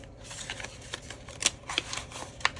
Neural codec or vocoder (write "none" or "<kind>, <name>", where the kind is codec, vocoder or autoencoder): none